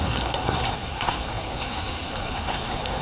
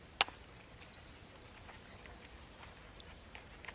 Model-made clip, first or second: first